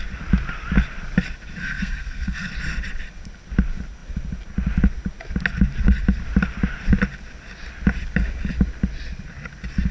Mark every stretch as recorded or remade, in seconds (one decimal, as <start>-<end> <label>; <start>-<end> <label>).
0.0-1.6 recorded; 1.6-2.5 remade; 2.5-9.9 recorded